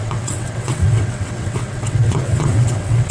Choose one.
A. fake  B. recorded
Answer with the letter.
A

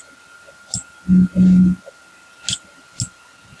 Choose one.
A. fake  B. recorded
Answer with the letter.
B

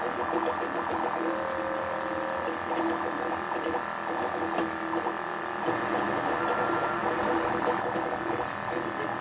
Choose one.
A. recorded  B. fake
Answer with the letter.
A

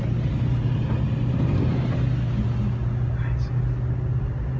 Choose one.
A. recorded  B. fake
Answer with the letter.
A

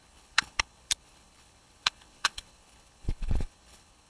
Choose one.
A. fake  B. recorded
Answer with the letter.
A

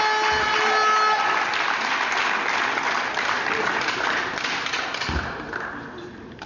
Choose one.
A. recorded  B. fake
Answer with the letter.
A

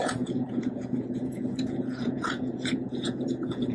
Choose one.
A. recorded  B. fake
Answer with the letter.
B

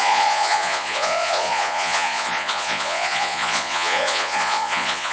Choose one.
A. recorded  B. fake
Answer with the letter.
B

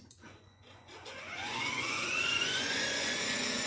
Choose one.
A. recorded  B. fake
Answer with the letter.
B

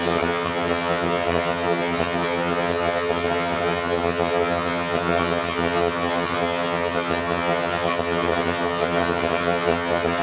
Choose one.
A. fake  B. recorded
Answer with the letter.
A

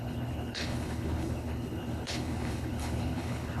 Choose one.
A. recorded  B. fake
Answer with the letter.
B